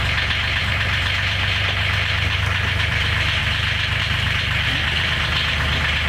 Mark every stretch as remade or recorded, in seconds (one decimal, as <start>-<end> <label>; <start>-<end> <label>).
0.0-0.6 recorded; 0.6-3.4 remade; 3.4-4.0 recorded; 4.0-6.1 remade

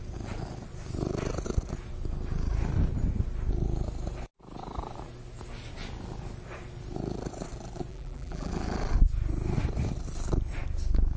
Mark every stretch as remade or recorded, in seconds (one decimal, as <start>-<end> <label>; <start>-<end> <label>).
0.0-7.9 recorded; 7.9-8.5 remade; 8.5-11.2 recorded